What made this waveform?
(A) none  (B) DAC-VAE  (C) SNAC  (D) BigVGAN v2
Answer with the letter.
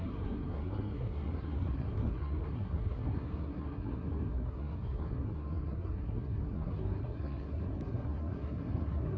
C